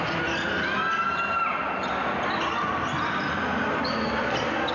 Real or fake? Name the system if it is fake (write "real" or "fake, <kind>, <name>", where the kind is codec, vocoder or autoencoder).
real